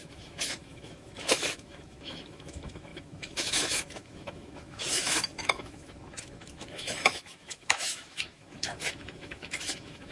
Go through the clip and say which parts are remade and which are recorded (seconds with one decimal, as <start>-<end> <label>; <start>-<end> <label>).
0.0-10.1 remade